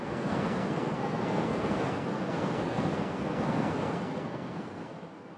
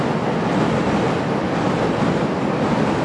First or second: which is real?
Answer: second